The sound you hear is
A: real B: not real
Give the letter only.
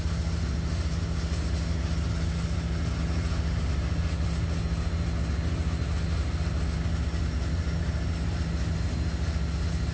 A